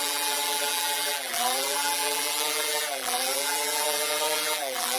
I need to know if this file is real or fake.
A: fake